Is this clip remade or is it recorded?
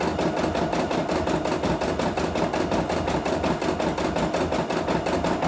recorded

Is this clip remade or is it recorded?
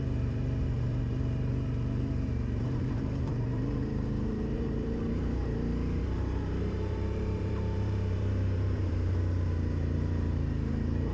remade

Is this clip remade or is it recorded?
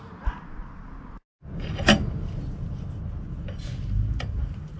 recorded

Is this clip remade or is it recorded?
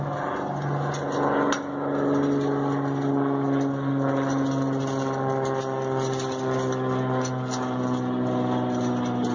recorded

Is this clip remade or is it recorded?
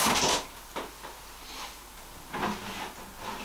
recorded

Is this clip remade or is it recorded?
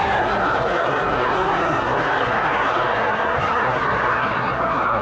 remade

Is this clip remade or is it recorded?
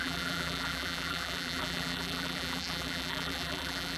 remade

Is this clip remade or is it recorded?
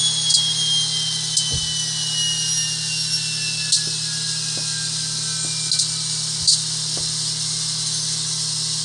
recorded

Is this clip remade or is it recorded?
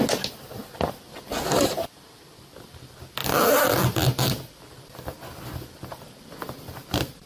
recorded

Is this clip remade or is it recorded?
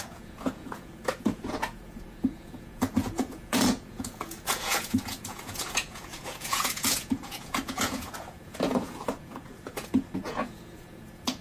remade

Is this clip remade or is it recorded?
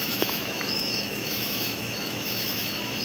remade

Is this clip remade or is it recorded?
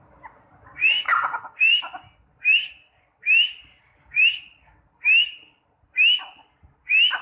remade